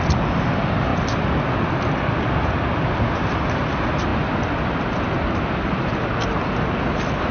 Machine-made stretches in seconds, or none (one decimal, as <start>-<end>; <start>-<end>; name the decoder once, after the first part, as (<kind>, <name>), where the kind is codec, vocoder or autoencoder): none